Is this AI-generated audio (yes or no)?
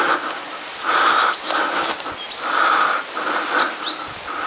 no